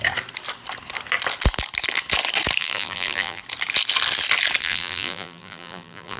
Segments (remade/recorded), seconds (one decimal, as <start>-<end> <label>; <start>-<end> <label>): 0.0-2.6 recorded; 2.6-3.4 remade; 3.4-4.6 recorded; 4.6-6.2 remade